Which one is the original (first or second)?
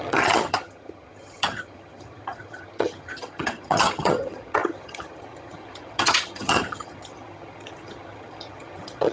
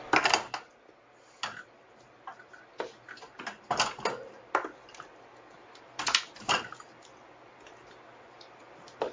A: second